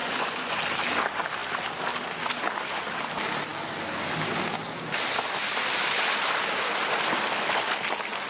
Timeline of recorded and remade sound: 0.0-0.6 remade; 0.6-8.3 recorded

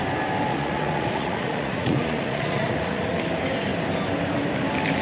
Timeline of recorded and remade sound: 0.0-0.5 recorded; 0.5-3.2 remade; 3.2-5.0 recorded